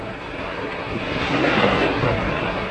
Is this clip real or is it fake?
fake